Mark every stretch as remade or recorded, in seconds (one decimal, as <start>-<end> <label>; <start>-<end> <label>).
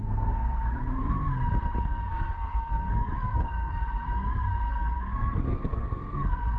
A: 0.0-1.2 remade; 1.2-1.8 recorded; 1.8-3.8 remade; 3.8-4.7 recorded; 4.7-6.6 remade